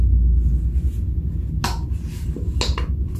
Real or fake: real